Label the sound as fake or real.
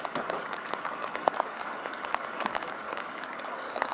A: fake